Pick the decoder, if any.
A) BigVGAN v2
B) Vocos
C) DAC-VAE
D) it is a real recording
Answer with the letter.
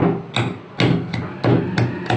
D